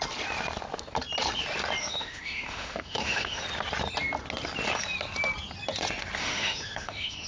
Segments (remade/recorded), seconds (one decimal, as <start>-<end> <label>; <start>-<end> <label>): 0.0-1.8 recorded; 1.8-3.4 remade; 3.4-6.2 recorded; 6.2-7.3 remade